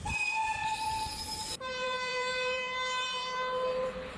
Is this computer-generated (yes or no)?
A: yes